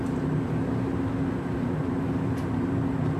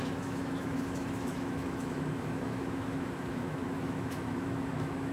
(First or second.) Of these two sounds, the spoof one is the second